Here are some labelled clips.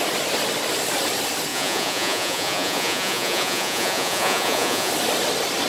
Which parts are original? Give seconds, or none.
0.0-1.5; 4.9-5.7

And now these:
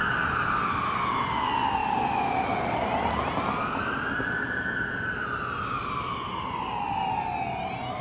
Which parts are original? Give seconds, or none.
0.0-8.0

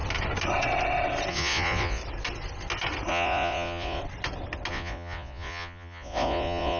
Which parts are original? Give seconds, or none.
0.0-1.3; 2.0-3.1; 4.0-4.7

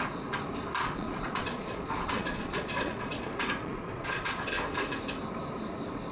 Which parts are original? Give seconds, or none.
0.0-0.8; 4.5-6.1

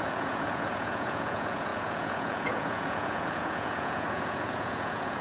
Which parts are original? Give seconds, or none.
none

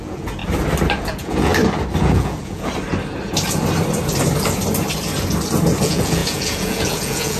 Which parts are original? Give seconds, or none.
0.4-1.0; 1.5-2.0; 2.7-5.8